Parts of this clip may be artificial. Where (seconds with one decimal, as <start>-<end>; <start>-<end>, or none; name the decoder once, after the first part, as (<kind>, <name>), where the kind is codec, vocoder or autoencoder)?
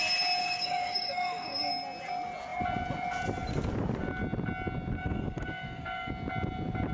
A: 0.4-1.7 (codec, DAC); 5.0-6.1